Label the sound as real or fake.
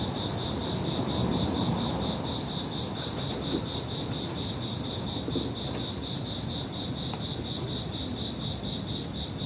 real